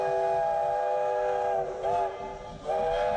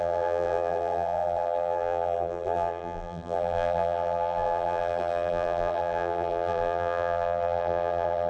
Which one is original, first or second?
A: first